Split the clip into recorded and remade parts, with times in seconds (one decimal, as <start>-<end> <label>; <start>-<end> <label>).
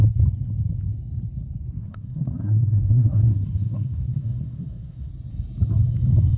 0.0-1.8 recorded; 1.8-5.1 remade; 5.1-6.4 recorded